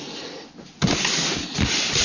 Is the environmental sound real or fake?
real